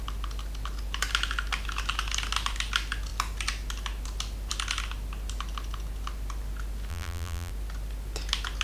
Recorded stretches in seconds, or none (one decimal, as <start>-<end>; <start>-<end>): 0.0-6.9; 7.5-8.6